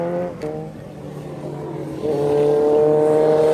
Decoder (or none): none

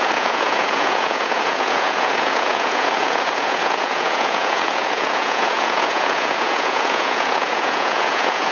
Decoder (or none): vocoder, Vocos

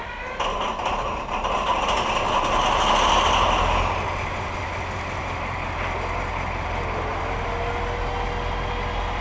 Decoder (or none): none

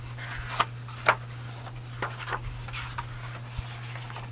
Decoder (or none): none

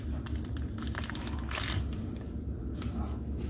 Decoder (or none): none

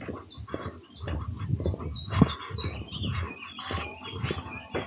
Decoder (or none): none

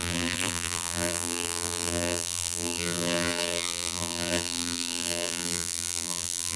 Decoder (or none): vocoder, BigVGAN v2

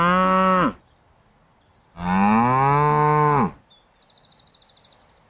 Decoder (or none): none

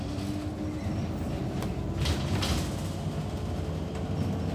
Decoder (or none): none